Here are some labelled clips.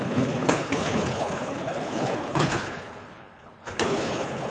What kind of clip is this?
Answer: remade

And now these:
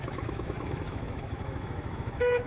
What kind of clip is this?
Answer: remade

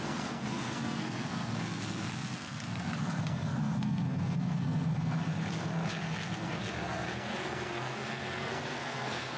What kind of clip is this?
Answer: remade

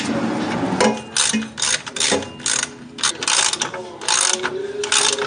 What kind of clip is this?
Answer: recorded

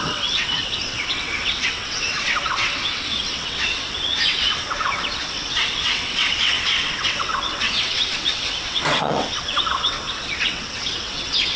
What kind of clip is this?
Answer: remade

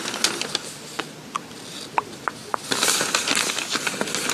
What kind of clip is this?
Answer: recorded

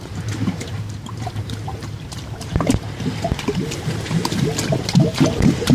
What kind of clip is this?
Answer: remade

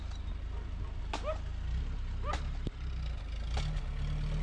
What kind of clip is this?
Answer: recorded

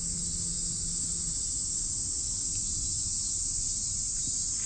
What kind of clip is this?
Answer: recorded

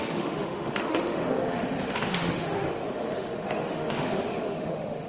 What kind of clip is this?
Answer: remade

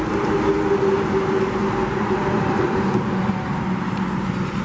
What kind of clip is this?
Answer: recorded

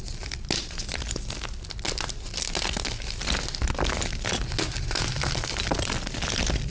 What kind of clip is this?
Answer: recorded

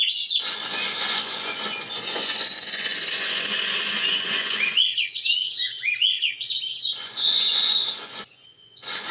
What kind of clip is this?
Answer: remade